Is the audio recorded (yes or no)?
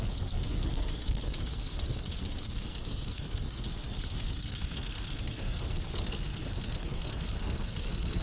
no